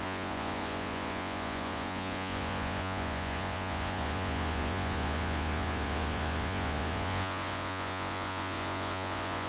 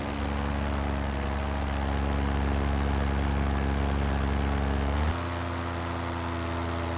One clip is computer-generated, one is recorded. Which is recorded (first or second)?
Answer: second